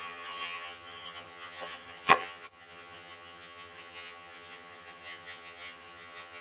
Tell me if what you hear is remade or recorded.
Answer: remade